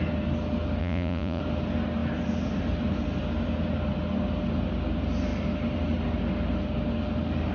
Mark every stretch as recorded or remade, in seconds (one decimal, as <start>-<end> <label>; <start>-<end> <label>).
0.0-0.8 recorded; 0.8-1.4 remade; 1.4-7.5 recorded